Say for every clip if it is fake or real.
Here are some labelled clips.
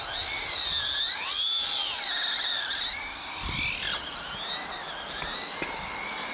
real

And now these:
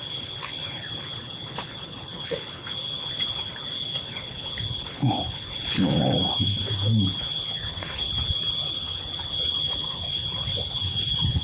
fake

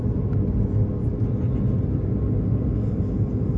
real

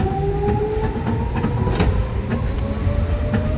real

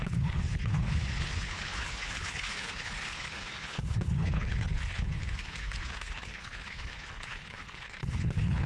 fake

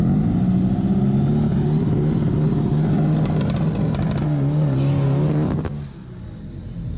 real